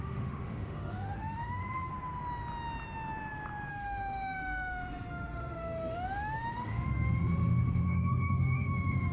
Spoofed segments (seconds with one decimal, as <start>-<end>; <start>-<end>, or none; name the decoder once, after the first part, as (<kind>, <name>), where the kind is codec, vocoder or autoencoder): 0.0-1.9 (autoencoder, DAC-VAE); 3.7-9.1